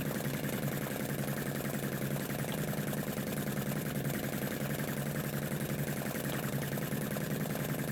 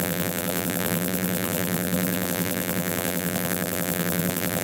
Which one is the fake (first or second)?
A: second